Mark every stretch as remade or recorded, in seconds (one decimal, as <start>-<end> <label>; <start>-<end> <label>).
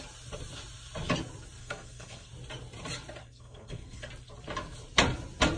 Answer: 0.0-1.6 recorded; 1.6-2.3 remade; 2.3-3.2 recorded; 3.2-4.1 remade; 4.1-5.6 recorded